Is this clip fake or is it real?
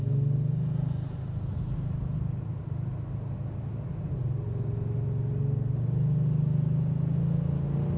real